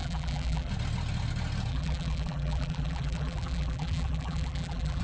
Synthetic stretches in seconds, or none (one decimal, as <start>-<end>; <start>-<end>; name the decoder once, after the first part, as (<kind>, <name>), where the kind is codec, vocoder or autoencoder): 0.0-0.7 (vocoder, BigVGAN v2); 1.7-5.0